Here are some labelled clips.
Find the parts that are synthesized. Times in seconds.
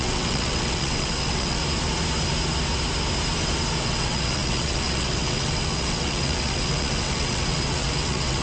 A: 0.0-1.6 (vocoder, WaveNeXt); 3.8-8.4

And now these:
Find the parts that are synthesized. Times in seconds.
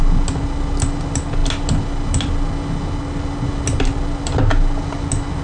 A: none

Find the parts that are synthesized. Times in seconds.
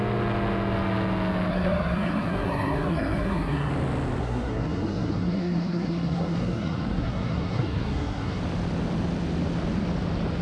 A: 1.5-3.7 (codec, SNAC); 4.2-8.4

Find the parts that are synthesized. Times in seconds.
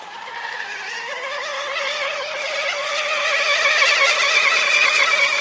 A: none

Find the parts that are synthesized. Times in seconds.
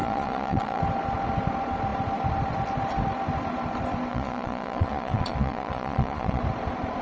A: 0.0-0.8 (vocoder, Vocos); 4.1-6.4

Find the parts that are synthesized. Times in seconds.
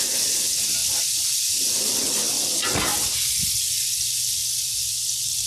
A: 0.8-1.4 (vocoder, BigVGAN v2)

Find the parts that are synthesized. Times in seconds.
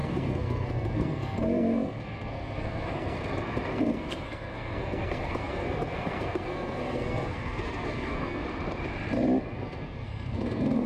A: 0.0-8.4 (codec, SNAC); 9.4-10.9